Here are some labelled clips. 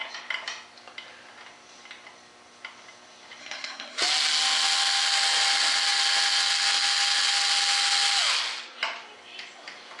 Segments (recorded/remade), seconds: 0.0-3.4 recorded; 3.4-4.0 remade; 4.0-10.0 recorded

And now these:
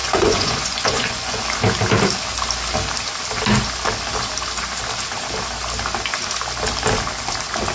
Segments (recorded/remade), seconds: 0.0-1.4 remade; 1.4-7.7 recorded

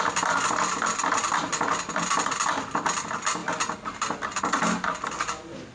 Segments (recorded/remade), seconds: 0.0-5.7 recorded

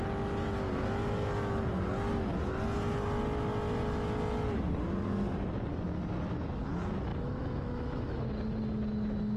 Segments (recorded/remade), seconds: 0.0-7.1 recorded; 7.1-8.3 remade; 8.3-9.4 recorded

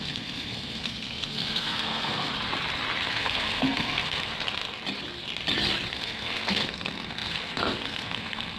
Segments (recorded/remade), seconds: 0.0-2.3 remade; 2.3-3.1 recorded; 3.1-4.3 remade; 4.3-5.9 recorded; 5.9-8.6 remade

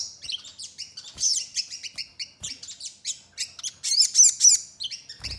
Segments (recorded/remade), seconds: 0.0-0.5 recorded; 0.5-3.7 remade; 3.7-5.4 recorded